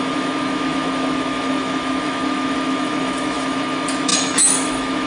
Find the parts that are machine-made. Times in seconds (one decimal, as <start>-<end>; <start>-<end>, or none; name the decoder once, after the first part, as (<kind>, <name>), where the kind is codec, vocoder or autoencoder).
0.0-5.1 (autoencoder, DAC-VAE)